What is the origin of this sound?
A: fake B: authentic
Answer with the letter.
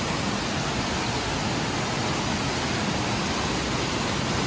B